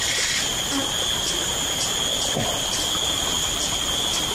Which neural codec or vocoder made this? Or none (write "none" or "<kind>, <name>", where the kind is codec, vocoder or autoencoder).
none